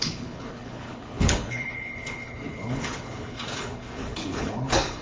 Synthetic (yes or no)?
yes